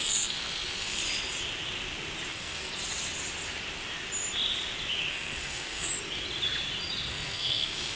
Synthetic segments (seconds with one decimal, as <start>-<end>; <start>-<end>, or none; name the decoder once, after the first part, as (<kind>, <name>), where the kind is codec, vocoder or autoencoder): 0.0-1.0 (codec, SNAC); 2.3-2.7; 5.1-5.9; 7.1-8.0